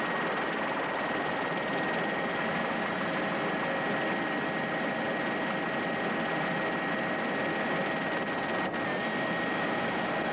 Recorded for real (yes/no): yes